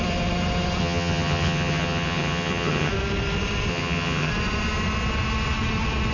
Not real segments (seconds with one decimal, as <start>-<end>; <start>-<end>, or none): 0.8-2.9; 3.7-4.3